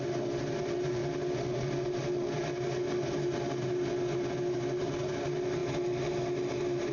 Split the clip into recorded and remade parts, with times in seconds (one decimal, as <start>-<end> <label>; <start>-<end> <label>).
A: 0.0-6.9 recorded